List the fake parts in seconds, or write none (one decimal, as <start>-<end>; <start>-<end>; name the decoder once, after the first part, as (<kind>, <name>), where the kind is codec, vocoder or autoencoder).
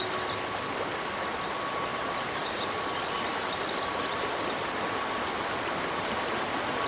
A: 1.9-6.0 (vocoder, BigVGAN v2)